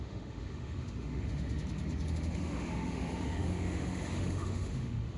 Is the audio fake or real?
fake